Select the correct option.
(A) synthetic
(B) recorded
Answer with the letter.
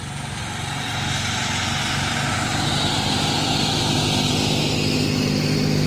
B